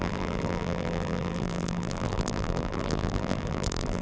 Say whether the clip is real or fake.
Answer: fake